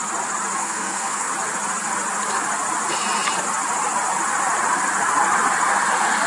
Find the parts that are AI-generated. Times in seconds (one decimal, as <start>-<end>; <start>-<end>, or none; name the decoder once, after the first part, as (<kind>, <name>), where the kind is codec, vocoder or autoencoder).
0.6-1.3 (codec, SNAC)